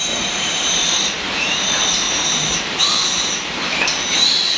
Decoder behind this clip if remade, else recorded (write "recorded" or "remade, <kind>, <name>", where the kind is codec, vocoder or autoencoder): remade, vocoder, BigVGAN v2